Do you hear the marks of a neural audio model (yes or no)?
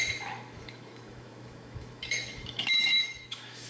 yes